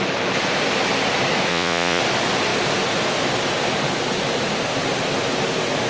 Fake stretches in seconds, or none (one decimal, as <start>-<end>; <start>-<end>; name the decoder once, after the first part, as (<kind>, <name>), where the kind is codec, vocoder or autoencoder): 1.5-2.0 (vocoder, Vocos)